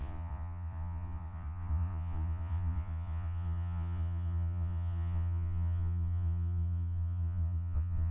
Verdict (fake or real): fake